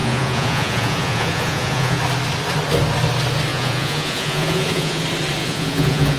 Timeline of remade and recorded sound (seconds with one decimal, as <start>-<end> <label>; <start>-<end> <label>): 0.0-2.0 remade; 2.0-3.5 recorded; 3.5-5.0 remade; 5.0-5.4 recorded; 5.4-6.2 remade